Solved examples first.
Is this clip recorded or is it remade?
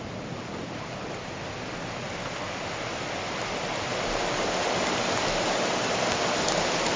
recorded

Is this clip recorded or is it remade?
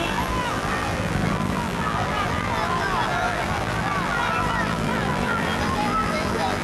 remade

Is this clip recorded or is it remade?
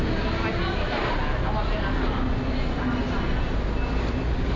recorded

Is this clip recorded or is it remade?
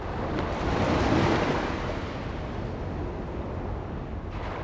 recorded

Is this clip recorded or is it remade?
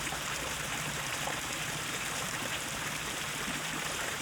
remade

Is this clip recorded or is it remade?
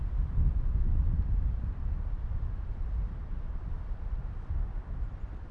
recorded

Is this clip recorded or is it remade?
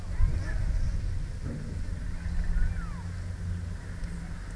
recorded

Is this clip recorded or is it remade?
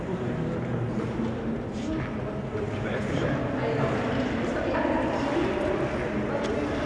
recorded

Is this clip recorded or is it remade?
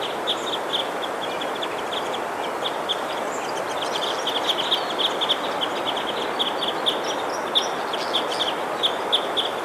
recorded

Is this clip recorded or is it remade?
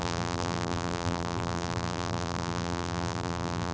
remade